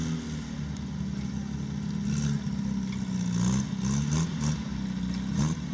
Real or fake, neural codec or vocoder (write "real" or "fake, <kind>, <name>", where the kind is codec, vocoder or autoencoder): real